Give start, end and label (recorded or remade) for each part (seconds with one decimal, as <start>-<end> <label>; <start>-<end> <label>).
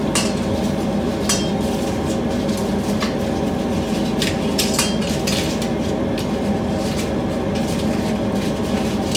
0.0-9.2 recorded